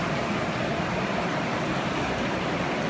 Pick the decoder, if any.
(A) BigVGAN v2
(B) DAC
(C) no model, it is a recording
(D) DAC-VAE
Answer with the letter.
C